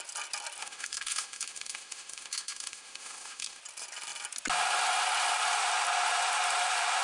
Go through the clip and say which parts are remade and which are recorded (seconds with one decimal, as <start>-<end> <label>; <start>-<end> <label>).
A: 0.0-0.6 recorded; 0.6-3.6 remade; 3.6-7.0 recorded